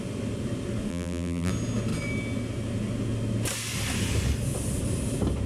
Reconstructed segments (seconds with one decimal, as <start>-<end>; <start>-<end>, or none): 0.9-1.5